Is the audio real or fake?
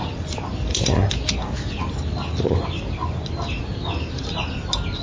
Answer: real